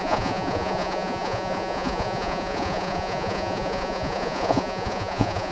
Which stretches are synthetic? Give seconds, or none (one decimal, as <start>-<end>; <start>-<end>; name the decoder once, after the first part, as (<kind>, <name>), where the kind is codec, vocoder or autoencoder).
0.0-5.5 (vocoder, Vocos)